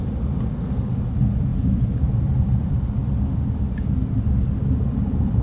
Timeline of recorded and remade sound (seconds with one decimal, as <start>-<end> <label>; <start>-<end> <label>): 0.0-0.5 recorded; 0.5-1.0 remade; 1.0-5.4 recorded